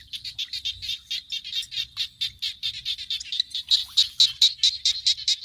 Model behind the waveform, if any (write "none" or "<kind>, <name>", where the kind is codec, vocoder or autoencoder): vocoder, BigVGAN v2